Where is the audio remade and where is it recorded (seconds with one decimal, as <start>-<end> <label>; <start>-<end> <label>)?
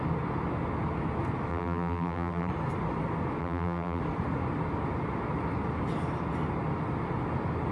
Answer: 0.0-1.5 recorded; 1.5-2.5 remade; 2.5-3.4 recorded; 3.4-4.0 remade; 4.0-7.7 recorded